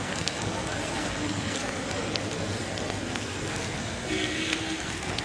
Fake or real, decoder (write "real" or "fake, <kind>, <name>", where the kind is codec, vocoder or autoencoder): fake, codec, SNAC